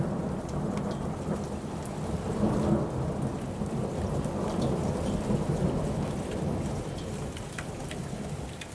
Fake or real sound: real